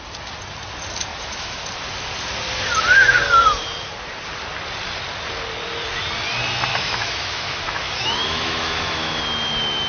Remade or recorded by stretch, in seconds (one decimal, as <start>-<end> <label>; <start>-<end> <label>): 0.0-1.1 recorded; 1.1-1.6 remade; 1.6-6.7 recorded; 6.7-9.2 remade; 9.2-9.9 recorded